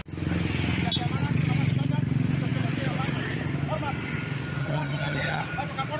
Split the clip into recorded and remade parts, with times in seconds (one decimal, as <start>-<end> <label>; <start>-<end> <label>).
0.0-4.6 recorded; 4.6-5.4 remade; 5.4-6.0 recorded